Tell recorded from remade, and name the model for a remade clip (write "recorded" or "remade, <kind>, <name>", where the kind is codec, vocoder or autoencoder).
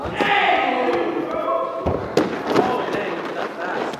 recorded